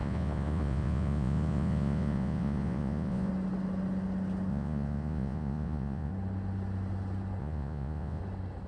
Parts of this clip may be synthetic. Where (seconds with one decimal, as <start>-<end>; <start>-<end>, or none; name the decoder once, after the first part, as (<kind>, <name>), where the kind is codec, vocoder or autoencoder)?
0.0-3.3 (vocoder, Vocos); 4.5-6.1; 7.4-8.2